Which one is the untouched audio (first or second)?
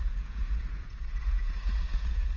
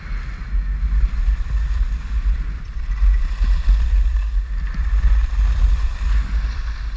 second